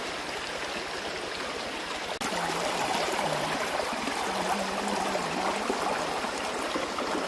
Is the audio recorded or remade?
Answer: recorded